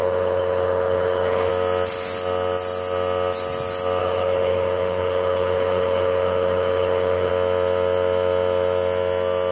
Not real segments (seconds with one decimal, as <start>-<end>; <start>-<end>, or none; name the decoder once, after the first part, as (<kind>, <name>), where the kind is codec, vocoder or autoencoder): 0.0-1.5 (codec, HILCodec); 4.0-7.3